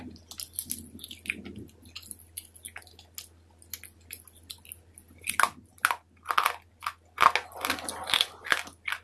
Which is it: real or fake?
real